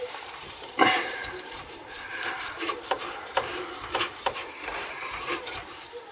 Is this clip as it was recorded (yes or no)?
no